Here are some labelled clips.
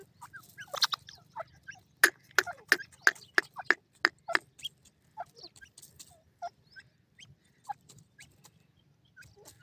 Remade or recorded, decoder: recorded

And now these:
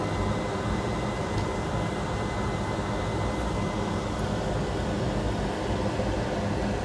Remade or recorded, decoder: recorded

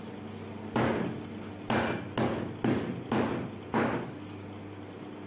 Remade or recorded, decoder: recorded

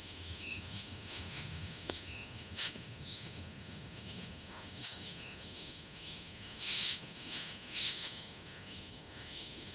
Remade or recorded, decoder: remade, autoencoder, DAC-VAE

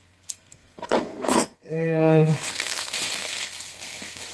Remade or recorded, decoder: remade, codec, SNAC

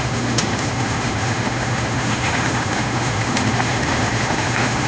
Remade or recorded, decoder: remade, autoencoder, DAC-VAE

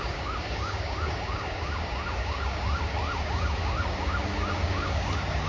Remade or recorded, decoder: remade, codec, DAC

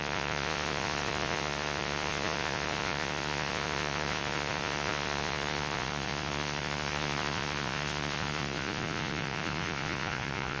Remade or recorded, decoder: remade, vocoder, Vocos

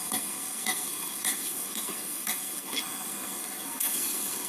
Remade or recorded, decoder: remade, codec, SNAC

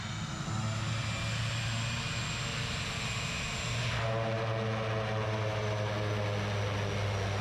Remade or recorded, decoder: recorded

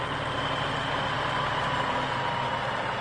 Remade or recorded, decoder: recorded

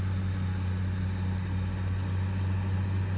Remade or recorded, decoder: recorded